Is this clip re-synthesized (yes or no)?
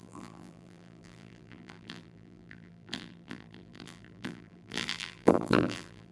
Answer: yes